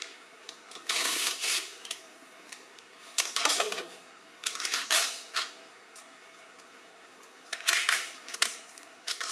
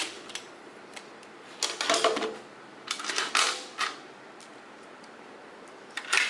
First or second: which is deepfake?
first